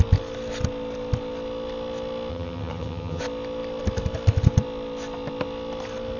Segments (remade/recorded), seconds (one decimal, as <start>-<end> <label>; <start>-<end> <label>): 0.0-2.3 recorded; 2.3-3.2 remade; 3.2-6.2 recorded

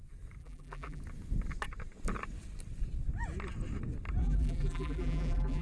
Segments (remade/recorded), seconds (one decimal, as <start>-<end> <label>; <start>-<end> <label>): 0.0-0.4 recorded; 0.4-1.0 remade; 1.0-4.2 recorded; 4.2-5.6 remade

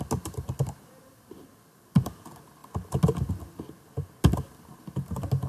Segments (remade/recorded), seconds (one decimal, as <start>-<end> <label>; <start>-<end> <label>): 0.0-5.5 recorded

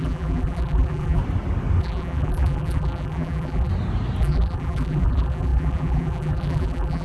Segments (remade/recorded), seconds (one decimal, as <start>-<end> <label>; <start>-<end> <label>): 0.0-1.2 remade; 1.2-1.8 recorded; 1.8-3.7 remade; 3.7-4.2 recorded; 4.2-7.0 remade